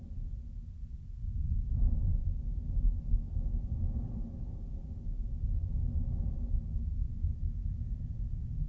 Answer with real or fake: real